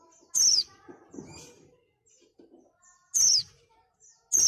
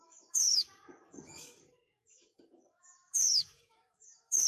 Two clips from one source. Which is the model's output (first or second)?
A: second